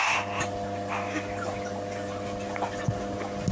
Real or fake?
real